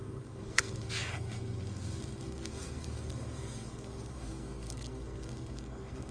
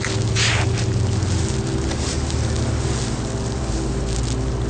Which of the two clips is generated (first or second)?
first